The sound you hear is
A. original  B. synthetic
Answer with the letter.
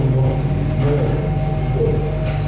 A